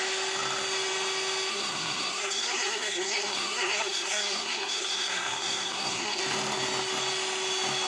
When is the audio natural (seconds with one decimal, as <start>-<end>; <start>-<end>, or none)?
0.0-1.5; 6.2-7.9